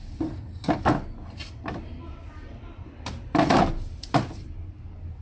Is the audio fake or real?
real